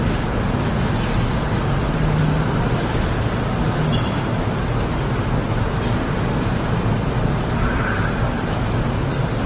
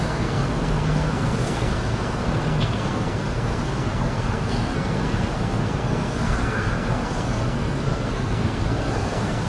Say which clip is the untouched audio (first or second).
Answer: first